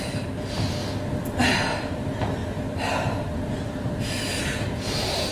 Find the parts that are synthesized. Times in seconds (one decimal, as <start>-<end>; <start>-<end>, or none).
0.0-0.8; 1.4-2.4; 3.5-5.3